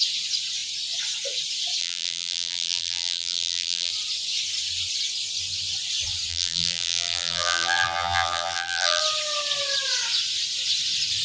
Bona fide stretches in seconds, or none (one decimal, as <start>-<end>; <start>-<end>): 0.0-1.8; 3.9-6.3; 9.0-11.2